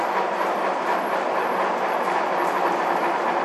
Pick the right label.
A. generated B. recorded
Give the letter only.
B